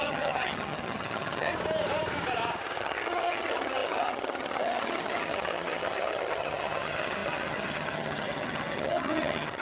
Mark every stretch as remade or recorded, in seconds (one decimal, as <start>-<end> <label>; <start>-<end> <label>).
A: 0.0-1.5 remade; 1.5-2.8 recorded; 2.8-9.6 remade